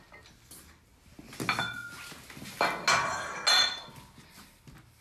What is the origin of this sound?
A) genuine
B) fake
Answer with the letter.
A